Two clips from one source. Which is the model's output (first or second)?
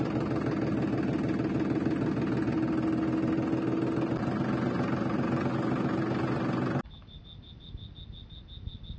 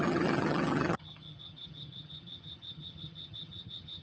second